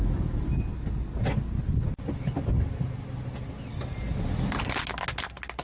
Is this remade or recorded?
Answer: recorded